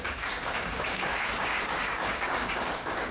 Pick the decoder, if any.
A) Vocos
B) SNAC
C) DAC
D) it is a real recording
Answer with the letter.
C